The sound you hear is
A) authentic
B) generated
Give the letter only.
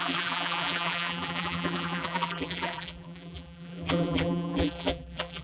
B